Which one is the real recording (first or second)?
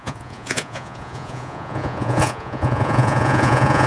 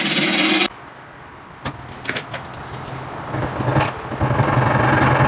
second